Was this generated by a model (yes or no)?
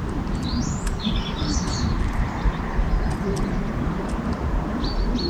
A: yes